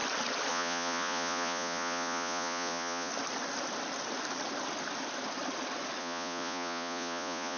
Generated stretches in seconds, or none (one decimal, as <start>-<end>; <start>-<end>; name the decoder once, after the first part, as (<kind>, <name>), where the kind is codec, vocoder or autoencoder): 0.5-3.1 (vocoder, Vocos); 6.0-7.6